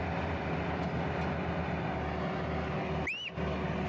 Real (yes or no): yes